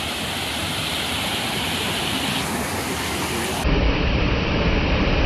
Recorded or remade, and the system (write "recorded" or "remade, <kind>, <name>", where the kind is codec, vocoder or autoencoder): recorded